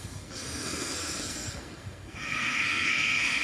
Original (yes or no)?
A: no